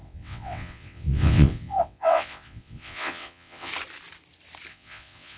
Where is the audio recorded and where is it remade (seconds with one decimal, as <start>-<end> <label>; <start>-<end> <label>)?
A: 0.0-3.7 remade; 3.7-4.7 recorded; 4.7-5.4 remade